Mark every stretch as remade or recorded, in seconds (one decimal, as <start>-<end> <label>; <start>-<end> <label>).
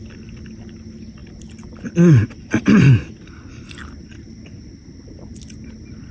0.0-6.1 recorded